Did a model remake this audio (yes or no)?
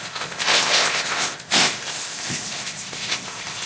yes